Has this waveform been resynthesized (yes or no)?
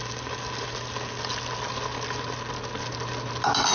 no